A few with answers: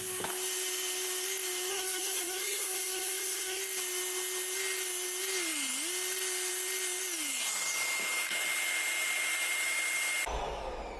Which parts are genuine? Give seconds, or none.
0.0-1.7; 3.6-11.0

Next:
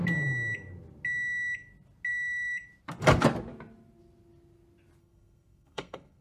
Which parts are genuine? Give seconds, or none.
0.0-5.0

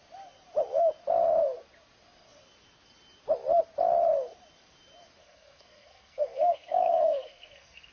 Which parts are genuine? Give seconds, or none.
0.0-5.2

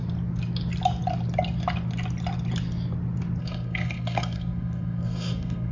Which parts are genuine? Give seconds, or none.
0.0-3.4

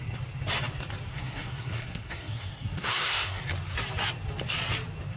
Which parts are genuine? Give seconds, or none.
0.0-1.1; 3.4-5.2

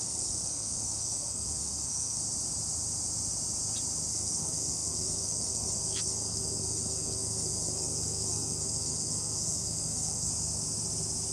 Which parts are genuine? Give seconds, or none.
2.2-4.1; 10.3-11.3

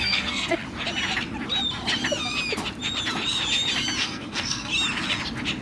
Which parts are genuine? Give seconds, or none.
0.6-4.0; 4.7-5.6

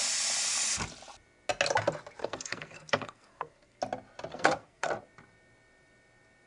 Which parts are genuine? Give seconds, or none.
0.0-2.2; 3.8-4.3; 4.9-6.5